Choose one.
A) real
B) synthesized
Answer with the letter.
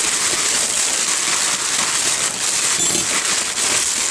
A